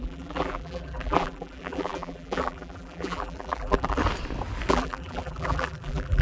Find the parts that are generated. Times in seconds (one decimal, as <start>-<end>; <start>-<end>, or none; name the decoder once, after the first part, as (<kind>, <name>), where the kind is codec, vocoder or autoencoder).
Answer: 0.0-4.0 (vocoder, BigVGAN v2); 4.7-6.2